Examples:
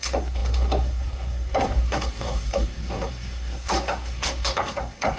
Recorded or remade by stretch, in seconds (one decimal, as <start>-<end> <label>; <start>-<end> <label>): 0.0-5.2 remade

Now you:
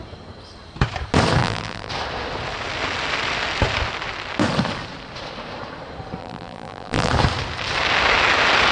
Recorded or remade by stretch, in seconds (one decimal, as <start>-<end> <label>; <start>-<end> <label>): 0.0-1.4 recorded; 1.4-1.9 remade; 1.9-6.2 recorded; 6.2-7.1 remade; 7.1-8.7 recorded

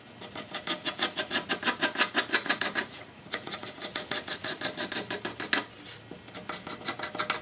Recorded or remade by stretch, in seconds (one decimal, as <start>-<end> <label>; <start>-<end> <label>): 0.0-0.8 recorded; 0.8-1.5 remade; 1.5-2.4 recorded; 2.4-4.6 remade; 4.6-7.4 recorded